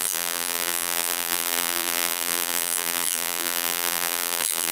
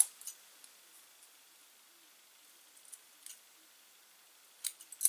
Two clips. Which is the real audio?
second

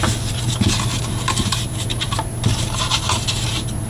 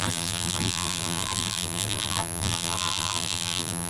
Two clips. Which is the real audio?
first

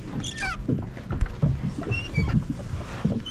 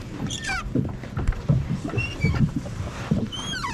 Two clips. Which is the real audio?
first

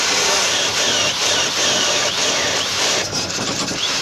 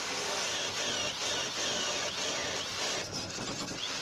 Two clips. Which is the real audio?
second